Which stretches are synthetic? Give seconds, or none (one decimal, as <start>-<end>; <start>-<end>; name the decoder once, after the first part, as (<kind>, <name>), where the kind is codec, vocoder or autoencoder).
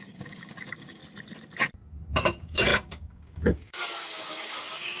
0.0-1.0 (codec, DAC); 2.1-5.0